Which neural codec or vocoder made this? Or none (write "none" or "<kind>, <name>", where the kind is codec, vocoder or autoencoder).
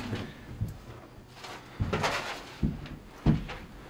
none